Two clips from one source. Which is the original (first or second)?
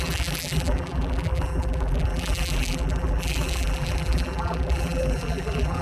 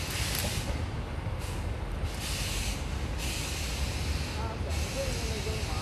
second